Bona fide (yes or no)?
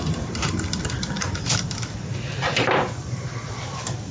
yes